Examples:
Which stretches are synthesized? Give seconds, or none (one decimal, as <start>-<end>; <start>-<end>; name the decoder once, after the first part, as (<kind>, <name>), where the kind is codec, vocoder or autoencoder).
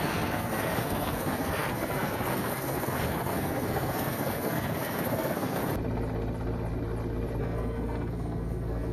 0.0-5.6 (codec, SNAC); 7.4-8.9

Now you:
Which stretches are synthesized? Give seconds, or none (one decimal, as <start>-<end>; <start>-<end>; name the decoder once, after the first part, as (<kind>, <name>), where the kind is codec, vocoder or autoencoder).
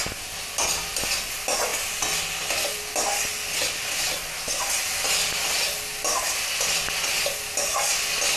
none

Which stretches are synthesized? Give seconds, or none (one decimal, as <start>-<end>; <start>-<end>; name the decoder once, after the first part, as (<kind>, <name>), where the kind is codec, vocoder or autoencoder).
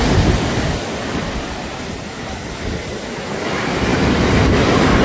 none